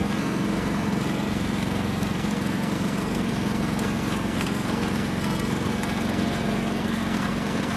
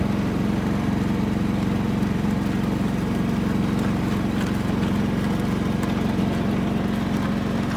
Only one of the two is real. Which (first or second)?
second